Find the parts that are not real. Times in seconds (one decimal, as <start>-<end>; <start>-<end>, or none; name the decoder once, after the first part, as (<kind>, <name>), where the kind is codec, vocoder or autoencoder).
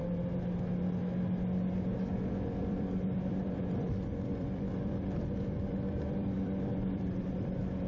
2.6-7.3 (vocoder, BigVGAN v2)